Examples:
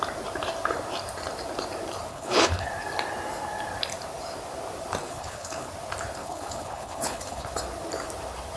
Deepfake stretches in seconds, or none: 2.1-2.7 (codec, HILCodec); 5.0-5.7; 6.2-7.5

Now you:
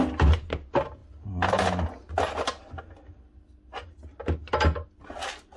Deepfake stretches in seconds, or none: none

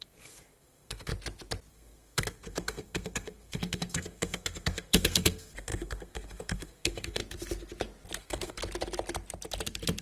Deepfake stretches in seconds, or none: 0.0-1.1 (codec, SNAC); 1.7-7.2; 8.2-8.6

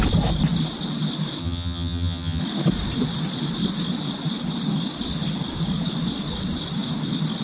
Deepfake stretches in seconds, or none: 1.4-2.4 (vocoder, HiFi-GAN)